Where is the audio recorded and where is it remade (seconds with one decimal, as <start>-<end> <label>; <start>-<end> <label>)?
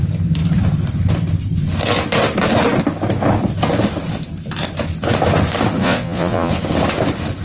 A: 0.0-5.8 recorded; 5.8-6.5 remade; 6.5-7.4 recorded